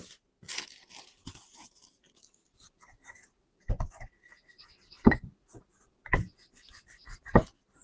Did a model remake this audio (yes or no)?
no